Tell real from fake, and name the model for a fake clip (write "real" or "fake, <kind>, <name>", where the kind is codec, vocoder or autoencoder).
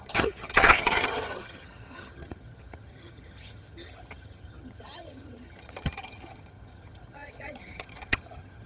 fake, vocoder, HiFi-GAN